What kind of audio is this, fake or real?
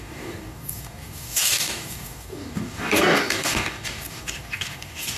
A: fake